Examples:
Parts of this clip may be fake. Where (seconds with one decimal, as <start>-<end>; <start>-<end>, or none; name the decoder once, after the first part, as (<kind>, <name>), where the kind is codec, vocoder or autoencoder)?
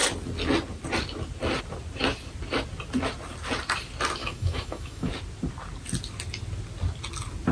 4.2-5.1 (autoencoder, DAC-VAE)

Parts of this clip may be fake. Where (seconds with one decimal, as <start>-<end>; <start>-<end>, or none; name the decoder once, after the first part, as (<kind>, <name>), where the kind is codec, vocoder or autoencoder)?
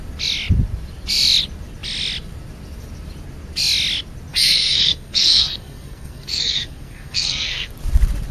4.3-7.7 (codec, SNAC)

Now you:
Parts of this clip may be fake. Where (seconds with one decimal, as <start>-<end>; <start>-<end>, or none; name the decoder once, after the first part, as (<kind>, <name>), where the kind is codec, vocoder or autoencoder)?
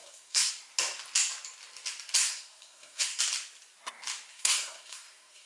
0.0-0.5 (codec, SNAC); 2.2-3.2; 4.3-5.5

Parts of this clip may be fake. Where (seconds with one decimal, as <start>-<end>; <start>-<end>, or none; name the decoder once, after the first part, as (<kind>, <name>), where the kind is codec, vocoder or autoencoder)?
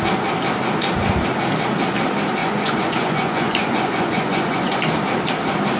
2.4-4.8 (vocoder, Vocos)